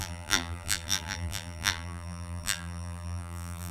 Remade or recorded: remade